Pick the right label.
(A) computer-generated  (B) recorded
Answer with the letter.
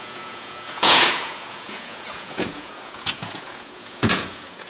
A